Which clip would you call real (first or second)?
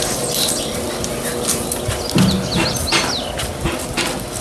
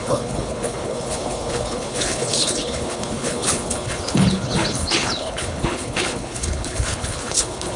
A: first